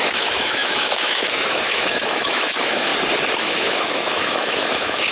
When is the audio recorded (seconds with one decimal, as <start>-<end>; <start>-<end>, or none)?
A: 2.9-3.4